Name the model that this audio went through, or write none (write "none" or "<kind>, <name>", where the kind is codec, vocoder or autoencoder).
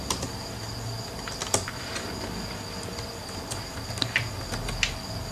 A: none